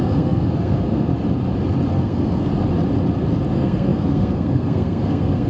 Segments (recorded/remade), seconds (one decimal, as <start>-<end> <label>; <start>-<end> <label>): 0.0-1.1 remade; 1.1-1.9 recorded; 1.9-2.5 remade; 2.5-3.5 recorded; 3.5-5.5 remade